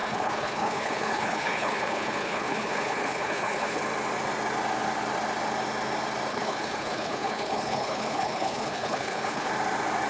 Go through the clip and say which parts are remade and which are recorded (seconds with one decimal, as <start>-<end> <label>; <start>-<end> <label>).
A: 0.0-3.8 remade; 3.8-6.3 recorded; 6.3-9.5 remade; 9.5-10.1 recorded